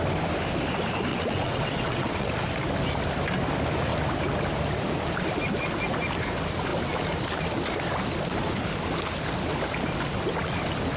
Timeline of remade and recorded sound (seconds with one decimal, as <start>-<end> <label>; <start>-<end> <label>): 0.0-1.1 recorded; 1.1-2.3 remade; 2.3-11.0 recorded